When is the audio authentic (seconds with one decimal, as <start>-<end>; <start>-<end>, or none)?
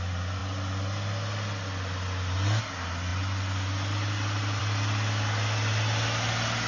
0.0-6.7